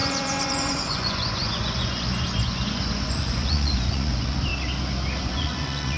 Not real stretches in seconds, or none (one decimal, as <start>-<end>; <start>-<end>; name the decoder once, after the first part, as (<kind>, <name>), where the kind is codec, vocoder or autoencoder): 0.0-4.5 (vocoder, Vocos); 5.2-6.0